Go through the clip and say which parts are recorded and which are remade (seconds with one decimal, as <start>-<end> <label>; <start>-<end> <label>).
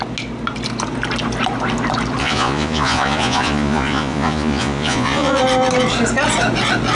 0.0-2.2 recorded; 2.2-5.4 remade; 5.4-6.9 recorded